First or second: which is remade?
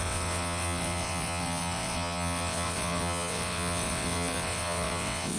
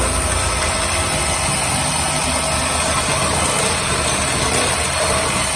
first